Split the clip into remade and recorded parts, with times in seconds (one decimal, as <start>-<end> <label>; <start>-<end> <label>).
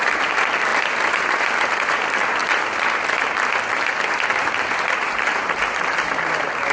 0.0-6.7 recorded